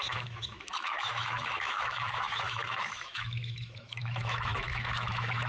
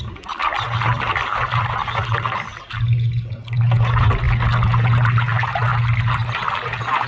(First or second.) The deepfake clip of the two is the first